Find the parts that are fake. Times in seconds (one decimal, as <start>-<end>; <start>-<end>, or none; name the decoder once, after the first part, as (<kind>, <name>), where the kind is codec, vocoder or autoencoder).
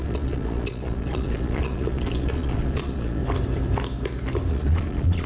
0.0-3.2 (vocoder, Vocos); 4.5-5.3